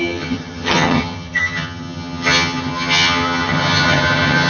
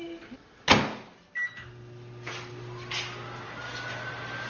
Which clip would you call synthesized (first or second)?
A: first